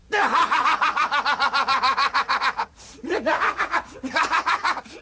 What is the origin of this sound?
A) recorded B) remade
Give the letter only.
B